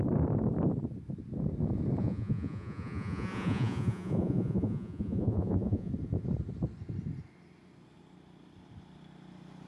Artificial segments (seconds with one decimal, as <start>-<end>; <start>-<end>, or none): 2.0-5.9